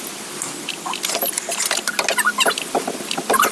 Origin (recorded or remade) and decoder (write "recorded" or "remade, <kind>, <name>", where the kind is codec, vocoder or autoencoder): recorded